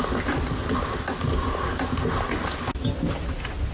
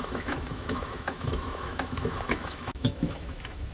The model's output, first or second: second